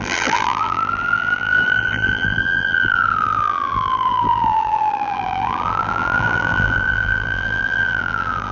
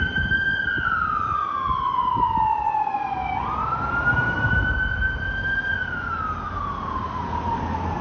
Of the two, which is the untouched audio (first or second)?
second